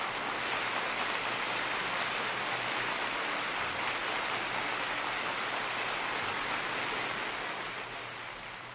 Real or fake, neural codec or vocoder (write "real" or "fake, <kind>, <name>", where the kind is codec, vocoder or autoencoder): real